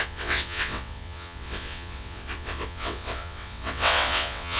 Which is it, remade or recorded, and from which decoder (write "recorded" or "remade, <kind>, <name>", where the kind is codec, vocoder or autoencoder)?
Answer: remade, vocoder, WaveNeXt